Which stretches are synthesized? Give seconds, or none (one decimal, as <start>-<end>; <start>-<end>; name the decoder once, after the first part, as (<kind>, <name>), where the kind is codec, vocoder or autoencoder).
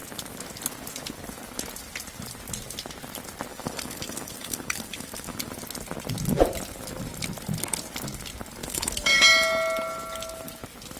3.5-5.4 (codec, DAC); 8.6-9.2